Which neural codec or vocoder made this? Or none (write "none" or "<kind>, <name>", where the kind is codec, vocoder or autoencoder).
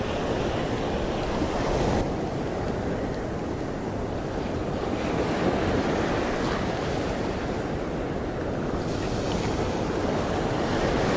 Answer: none